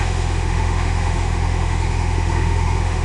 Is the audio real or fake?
fake